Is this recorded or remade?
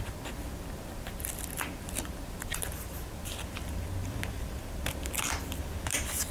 remade